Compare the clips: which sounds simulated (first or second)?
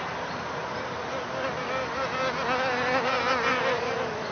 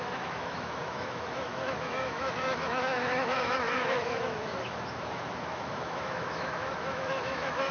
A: second